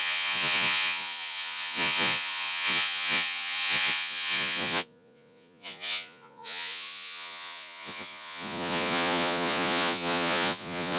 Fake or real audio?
fake